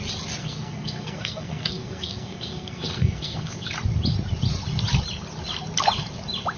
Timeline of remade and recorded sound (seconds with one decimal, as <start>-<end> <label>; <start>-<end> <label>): 0.0-0.4 recorded; 0.4-3.7 remade; 3.7-6.6 recorded